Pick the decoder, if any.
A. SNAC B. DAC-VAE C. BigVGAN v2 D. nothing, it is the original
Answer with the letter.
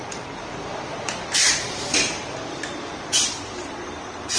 C